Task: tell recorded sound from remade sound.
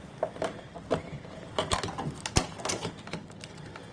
recorded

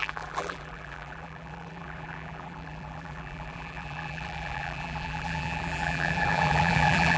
remade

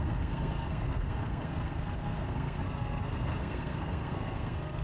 remade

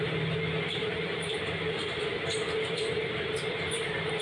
recorded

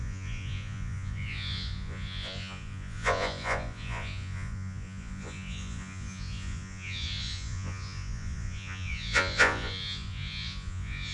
remade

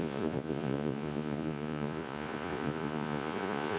remade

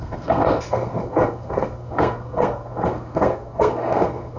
remade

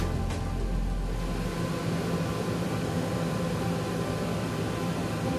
recorded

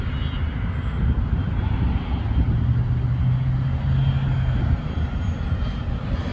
recorded